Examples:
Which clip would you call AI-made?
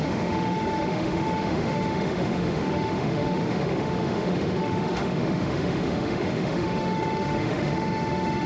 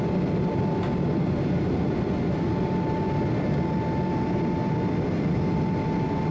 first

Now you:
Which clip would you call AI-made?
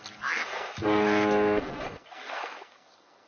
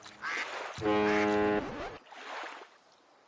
first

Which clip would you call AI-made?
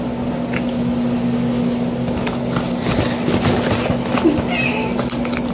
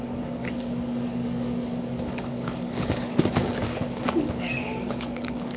second